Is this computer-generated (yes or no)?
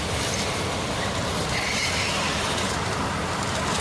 yes